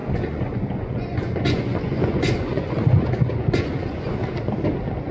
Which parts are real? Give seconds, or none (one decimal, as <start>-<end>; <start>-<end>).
4.2-5.1